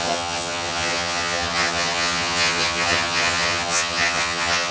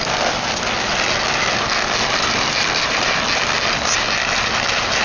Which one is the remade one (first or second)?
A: first